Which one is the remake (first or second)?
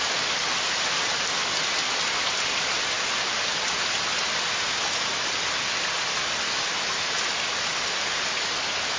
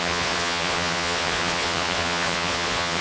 second